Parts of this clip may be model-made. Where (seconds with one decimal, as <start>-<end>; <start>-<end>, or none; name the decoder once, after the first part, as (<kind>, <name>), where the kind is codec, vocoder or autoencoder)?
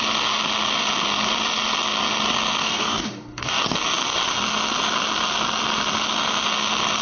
2.6-3.6 (codec, DAC)